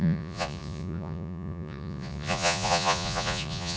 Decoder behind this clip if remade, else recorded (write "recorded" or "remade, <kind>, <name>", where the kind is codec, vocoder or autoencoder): remade, vocoder, Vocos